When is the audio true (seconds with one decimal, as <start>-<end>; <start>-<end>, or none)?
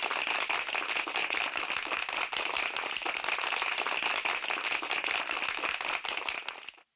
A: 0.0-7.0